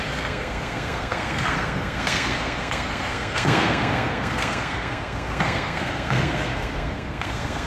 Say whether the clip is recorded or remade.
remade